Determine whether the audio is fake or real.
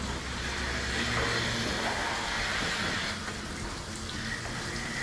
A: real